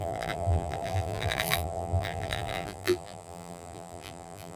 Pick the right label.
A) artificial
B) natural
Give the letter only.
A